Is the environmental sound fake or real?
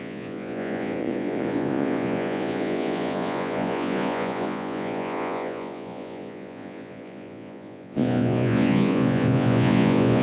fake